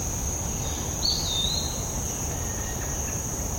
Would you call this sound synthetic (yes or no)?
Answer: no